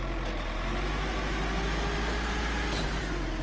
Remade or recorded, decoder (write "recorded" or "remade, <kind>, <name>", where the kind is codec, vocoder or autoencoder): recorded